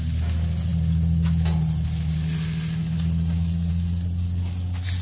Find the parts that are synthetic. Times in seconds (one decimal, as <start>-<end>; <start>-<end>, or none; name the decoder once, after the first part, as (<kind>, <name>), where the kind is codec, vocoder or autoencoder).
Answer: none